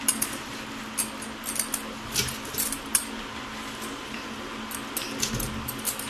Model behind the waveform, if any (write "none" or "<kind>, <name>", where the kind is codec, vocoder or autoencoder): none